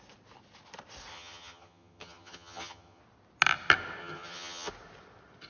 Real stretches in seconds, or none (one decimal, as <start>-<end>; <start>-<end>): 0.0-1.1; 3.0-4.0; 4.7-5.5